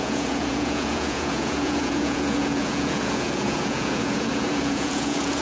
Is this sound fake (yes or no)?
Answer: yes